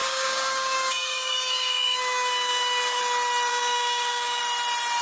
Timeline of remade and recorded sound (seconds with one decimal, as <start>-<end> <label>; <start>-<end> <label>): 0.0-3.0 remade; 3.0-3.5 recorded; 3.5-4.4 remade; 4.4-5.0 recorded